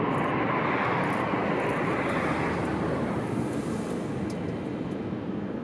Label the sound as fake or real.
real